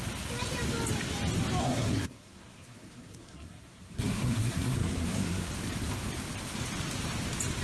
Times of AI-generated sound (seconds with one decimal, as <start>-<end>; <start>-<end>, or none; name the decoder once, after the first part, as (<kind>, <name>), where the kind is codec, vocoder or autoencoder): 1.6-5.5 (codec, SNAC)